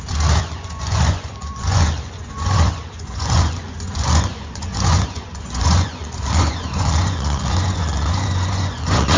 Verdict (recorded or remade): remade